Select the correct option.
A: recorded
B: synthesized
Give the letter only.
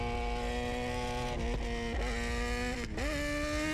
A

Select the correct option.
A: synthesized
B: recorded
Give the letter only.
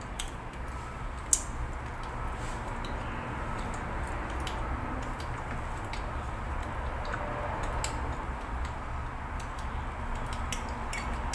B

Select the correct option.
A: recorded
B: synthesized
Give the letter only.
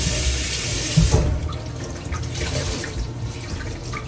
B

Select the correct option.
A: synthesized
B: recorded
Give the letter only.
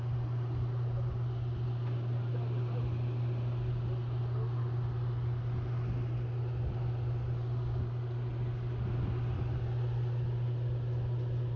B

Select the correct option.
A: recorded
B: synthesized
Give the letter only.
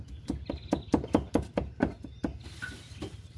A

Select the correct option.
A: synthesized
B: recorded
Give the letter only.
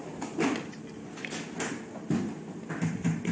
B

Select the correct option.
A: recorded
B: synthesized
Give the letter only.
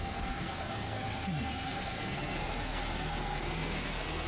B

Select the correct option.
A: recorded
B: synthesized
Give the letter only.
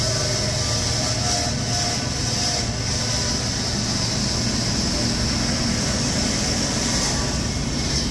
A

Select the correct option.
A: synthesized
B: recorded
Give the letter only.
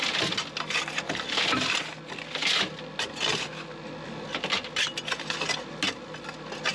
B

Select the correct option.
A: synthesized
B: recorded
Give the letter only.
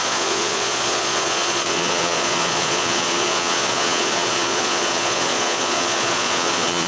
A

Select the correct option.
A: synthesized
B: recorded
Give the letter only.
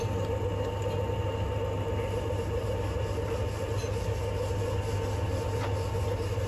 B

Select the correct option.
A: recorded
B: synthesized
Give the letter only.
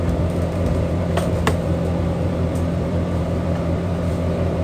B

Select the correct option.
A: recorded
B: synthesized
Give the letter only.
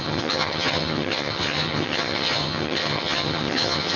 B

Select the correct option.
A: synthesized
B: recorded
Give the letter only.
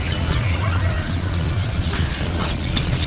A